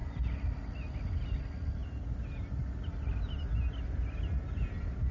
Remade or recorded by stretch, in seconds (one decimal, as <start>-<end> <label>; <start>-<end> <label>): 0.0-5.1 recorded